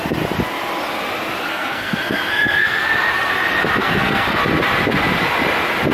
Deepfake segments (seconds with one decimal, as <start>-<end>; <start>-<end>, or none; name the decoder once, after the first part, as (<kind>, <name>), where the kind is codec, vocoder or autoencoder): 1.5-3.3 (codec, SNAC); 3.8-4.4